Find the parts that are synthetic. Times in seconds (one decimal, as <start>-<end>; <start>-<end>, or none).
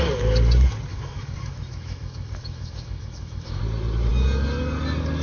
0.9-3.6